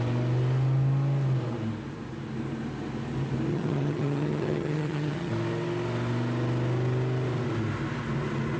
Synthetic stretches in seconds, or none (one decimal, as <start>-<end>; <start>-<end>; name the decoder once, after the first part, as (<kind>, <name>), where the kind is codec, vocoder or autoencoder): 3.5-5.3 (vocoder, HiFi-GAN)